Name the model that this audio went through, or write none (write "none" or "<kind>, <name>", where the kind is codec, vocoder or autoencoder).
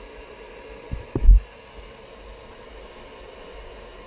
none